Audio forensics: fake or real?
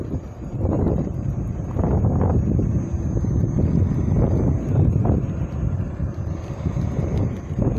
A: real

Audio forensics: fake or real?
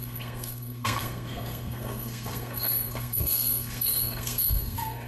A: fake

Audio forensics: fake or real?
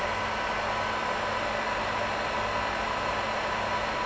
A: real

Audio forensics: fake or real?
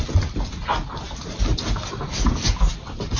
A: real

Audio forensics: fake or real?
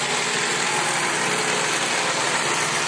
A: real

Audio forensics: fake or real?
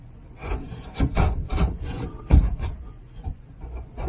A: fake